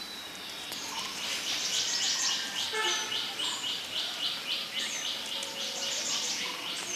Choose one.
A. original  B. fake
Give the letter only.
A